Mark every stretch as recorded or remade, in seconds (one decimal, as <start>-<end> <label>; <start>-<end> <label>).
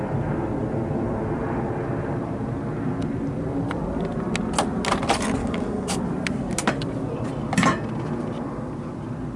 0.0-5.4 recorded; 5.4-6.0 remade; 6.0-9.4 recorded